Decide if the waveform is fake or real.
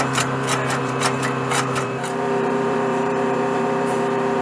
fake